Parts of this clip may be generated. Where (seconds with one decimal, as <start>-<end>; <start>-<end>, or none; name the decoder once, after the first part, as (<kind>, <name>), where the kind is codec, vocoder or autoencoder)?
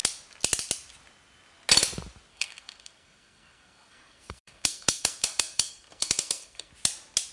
2.3-6.7 (codec, SNAC)